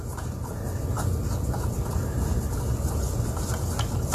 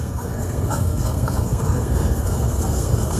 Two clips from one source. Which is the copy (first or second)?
second